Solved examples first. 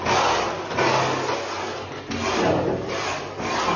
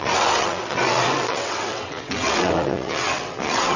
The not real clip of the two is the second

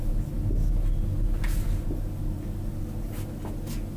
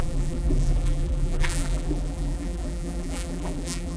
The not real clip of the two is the second